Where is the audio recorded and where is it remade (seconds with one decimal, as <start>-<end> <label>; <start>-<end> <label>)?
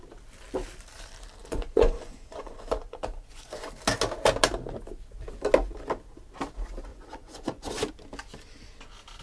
0.0-1.4 recorded; 1.4-3.7 remade; 3.7-6.9 recorded; 6.9-7.9 remade; 7.9-9.2 recorded